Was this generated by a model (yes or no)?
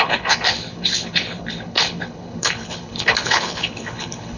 yes